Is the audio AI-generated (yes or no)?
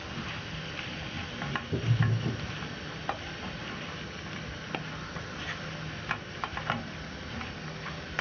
no